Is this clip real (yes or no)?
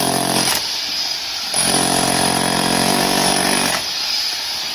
yes